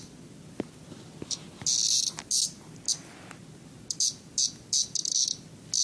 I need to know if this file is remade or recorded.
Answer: recorded